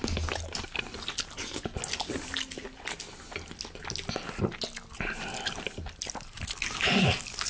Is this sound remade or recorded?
recorded